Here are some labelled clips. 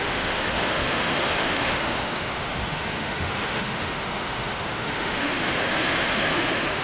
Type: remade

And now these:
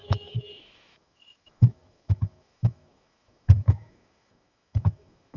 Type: remade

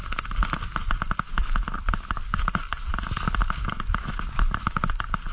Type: recorded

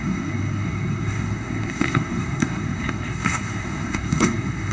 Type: remade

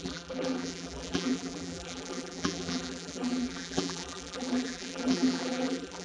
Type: remade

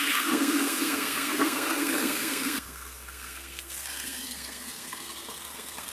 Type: remade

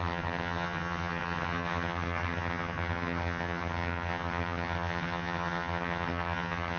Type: remade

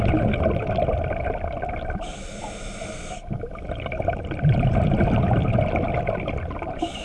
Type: recorded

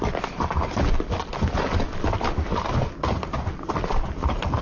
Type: recorded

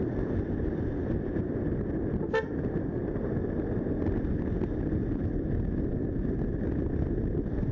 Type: recorded